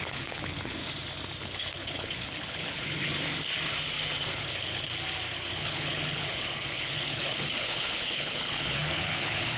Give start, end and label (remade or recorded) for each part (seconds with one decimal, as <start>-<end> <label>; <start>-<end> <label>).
0.0-0.8 remade; 0.8-1.4 recorded; 1.4-3.1 remade; 3.1-4.3 recorded; 4.3-4.9 remade; 4.9-5.5 recorded; 5.5-9.6 remade